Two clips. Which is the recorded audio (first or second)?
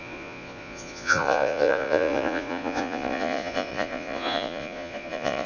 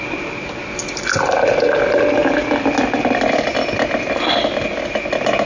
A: second